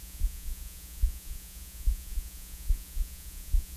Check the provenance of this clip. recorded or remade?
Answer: remade